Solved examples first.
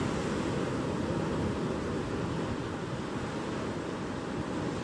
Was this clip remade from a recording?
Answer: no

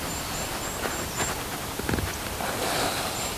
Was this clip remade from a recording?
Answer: no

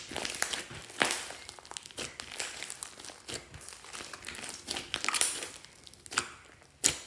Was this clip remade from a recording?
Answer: no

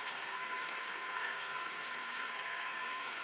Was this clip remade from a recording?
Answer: yes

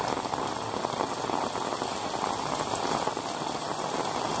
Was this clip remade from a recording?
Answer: no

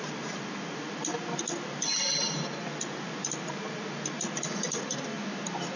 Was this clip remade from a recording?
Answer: no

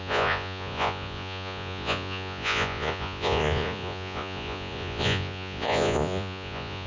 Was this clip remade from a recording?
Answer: yes